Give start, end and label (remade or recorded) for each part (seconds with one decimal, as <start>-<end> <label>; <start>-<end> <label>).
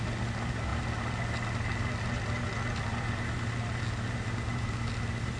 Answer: 0.0-5.4 recorded